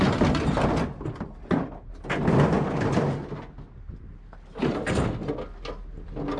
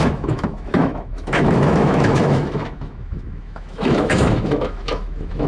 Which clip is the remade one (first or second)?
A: second